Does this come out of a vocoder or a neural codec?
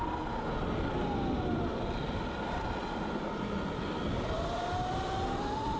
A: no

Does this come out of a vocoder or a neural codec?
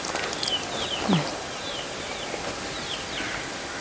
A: no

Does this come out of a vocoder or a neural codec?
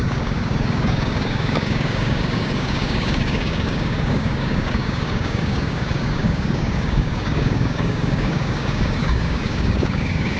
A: yes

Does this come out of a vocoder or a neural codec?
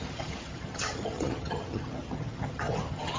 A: yes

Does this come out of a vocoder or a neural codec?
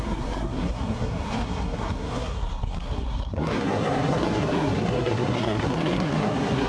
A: yes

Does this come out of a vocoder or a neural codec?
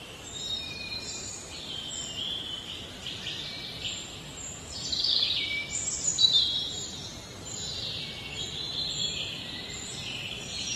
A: yes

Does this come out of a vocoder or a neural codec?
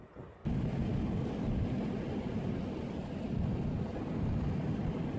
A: no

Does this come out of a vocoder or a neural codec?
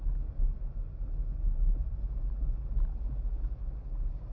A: no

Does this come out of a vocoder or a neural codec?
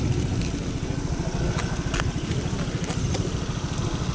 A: no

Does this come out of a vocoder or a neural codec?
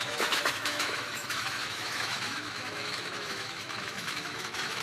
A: yes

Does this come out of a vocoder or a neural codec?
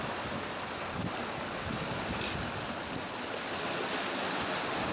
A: no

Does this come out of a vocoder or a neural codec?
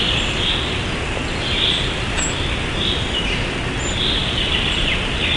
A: no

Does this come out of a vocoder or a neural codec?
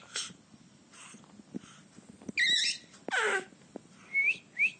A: no